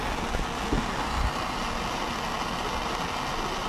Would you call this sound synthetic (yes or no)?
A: no